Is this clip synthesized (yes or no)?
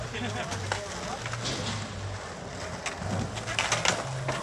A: no